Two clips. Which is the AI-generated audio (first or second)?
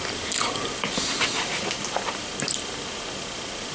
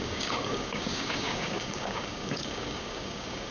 second